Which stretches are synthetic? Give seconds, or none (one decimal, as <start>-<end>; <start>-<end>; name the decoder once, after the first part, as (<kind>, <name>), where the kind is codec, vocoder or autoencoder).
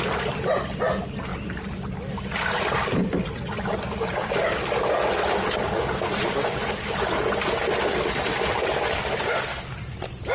none